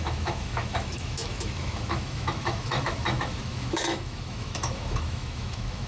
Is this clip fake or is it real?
fake